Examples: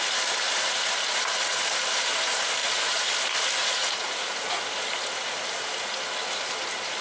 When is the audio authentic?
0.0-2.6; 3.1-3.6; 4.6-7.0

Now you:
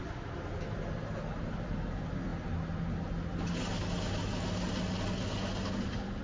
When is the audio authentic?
0.0-6.2

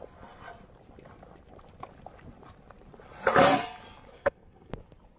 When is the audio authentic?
0.0-4.1; 4.7-5.2